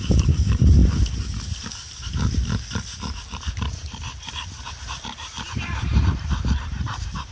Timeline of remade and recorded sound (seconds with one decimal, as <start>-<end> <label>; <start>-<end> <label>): 0.0-0.8 remade; 0.8-4.8 recorded; 4.8-7.3 remade